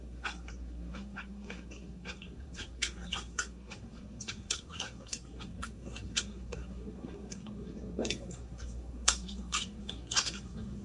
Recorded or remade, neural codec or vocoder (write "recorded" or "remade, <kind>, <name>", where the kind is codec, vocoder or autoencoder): remade, codec, SNAC